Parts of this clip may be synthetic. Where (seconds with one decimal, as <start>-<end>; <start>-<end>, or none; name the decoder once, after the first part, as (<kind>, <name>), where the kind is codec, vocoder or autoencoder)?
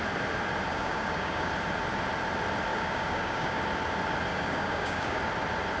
0.7-1.5 (codec, DAC); 2.7-3.6; 4.3-5.2